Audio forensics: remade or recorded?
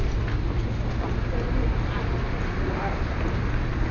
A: recorded